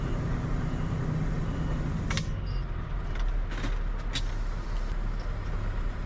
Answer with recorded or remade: recorded